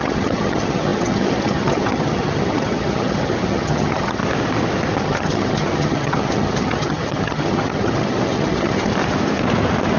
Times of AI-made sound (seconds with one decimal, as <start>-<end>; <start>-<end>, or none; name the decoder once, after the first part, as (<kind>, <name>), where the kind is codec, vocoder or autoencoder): 0.0-4.2 (vocoder, HiFi-GAN); 5.0-8.9